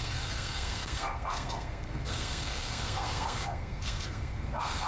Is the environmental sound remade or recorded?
remade